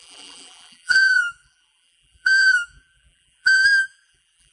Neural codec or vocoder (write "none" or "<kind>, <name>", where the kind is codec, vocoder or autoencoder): vocoder, BigVGAN v2